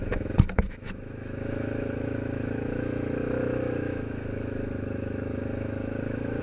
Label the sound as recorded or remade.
remade